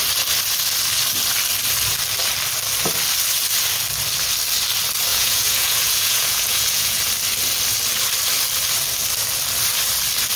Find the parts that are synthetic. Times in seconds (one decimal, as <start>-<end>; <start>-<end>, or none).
5.1-7.0